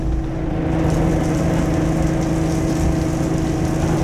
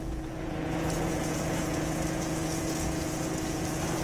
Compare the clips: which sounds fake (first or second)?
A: second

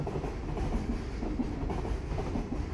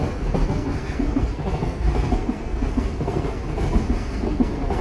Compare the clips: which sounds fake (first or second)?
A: second